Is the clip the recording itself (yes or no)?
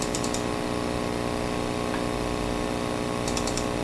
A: yes